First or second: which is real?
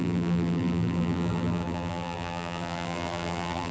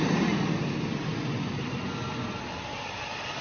second